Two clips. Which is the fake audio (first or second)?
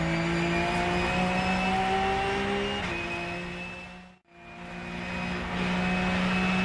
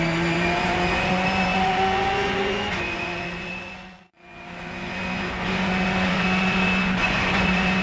second